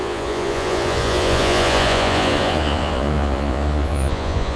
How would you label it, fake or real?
fake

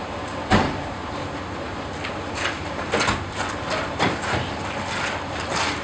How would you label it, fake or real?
real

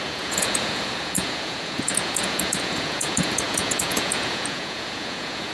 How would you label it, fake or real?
fake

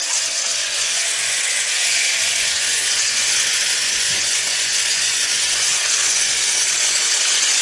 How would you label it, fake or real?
fake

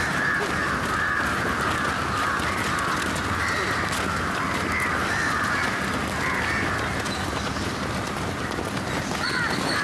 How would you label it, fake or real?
real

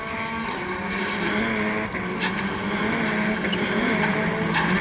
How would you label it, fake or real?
real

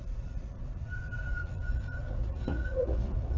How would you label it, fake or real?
fake